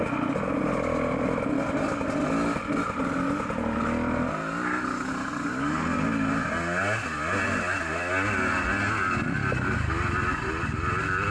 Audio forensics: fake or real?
real